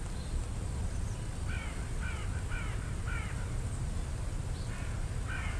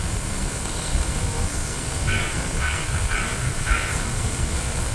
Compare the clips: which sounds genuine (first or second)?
first